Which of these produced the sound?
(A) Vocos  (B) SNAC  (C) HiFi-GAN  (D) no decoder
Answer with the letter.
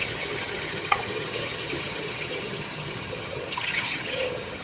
C